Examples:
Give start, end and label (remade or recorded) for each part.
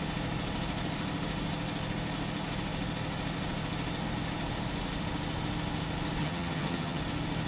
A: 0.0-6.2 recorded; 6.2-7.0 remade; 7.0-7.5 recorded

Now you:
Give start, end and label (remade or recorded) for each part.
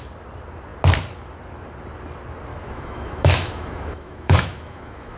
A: 0.0-2.5 recorded; 2.5-5.2 remade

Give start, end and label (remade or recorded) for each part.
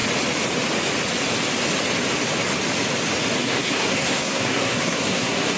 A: 0.0-3.4 recorded; 3.4-5.6 remade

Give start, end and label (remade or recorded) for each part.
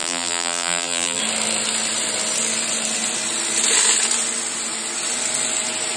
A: 0.0-1.2 remade; 1.2-6.0 recorded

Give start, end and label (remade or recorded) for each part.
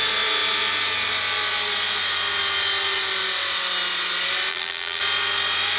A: 0.0-4.5 recorded; 4.5-5.0 remade; 5.0-5.8 recorded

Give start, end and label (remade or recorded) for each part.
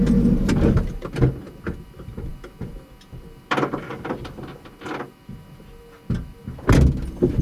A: 0.0-7.4 recorded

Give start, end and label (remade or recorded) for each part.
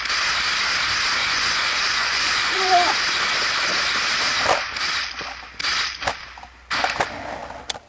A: 0.0-1.2 recorded; 1.2-2.7 remade; 2.7-7.9 recorded